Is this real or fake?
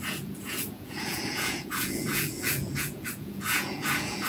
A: fake